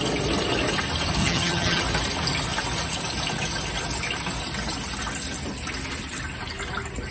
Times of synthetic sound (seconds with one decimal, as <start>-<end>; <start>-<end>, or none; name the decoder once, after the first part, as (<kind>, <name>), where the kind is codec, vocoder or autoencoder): 1.2-1.8 (vocoder, HiFi-GAN)